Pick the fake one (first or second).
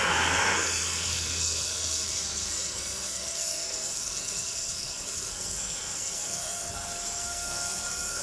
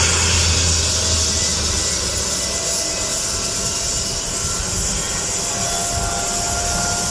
first